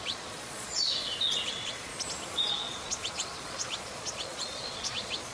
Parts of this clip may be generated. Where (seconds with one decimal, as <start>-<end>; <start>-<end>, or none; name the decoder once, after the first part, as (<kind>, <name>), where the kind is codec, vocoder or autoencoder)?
0.0-1.0 (vocoder, Vocos); 1.5-1.9; 2.5-5.3